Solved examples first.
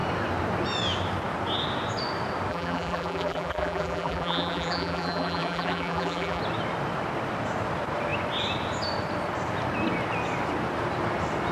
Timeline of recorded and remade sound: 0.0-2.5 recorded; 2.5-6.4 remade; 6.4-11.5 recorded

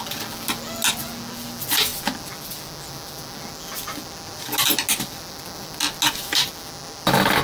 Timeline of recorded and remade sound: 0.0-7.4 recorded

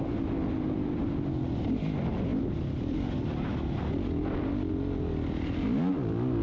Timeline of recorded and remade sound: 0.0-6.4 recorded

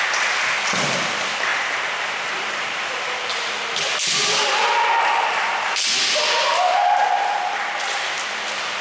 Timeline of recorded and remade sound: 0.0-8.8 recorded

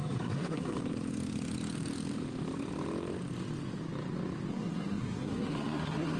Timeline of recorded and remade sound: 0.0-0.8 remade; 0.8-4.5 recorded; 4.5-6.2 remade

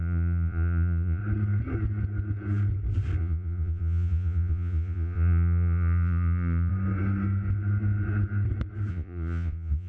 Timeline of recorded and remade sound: 0.0-1.2 remade; 1.2-3.2 recorded; 3.2-6.7 remade; 6.7-8.9 recorded; 8.9-9.9 remade

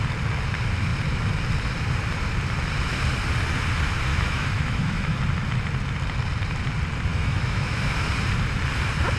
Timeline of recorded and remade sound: 0.0-4.1 recorded; 4.1-5.2 remade; 5.2-7.1 recorded; 7.1-8.1 remade; 8.1-9.2 recorded